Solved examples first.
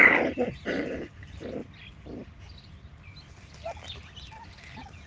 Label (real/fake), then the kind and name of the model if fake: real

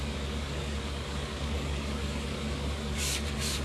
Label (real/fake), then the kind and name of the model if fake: fake, codec, DAC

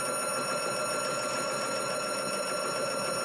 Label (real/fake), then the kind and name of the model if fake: real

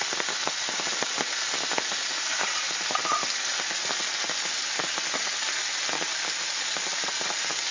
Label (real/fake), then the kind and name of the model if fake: real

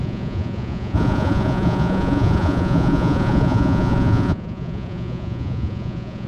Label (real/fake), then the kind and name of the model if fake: fake, vocoder, Vocos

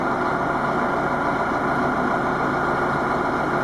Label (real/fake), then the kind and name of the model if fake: real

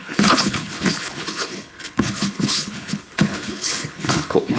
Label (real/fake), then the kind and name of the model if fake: fake, codec, HILCodec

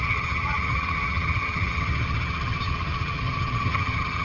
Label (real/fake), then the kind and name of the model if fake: fake, vocoder, HiFi-GAN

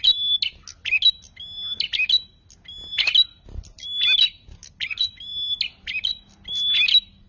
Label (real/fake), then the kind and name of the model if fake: real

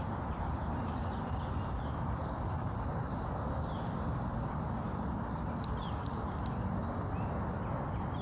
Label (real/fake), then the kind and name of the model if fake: fake, vocoder, BigVGAN v2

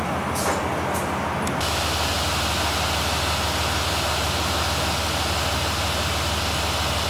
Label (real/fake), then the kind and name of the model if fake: real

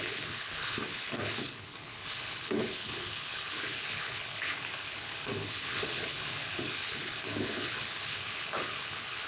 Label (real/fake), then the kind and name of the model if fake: fake, codec, HILCodec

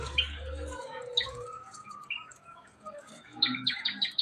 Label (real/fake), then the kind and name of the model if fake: fake, codec, DAC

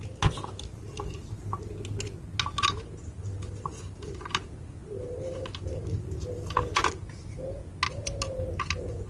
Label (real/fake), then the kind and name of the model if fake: real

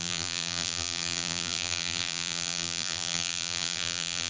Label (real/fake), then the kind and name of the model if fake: fake, vocoder, BigVGAN v2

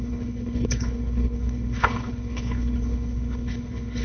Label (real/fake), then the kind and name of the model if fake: fake, codec, HILCodec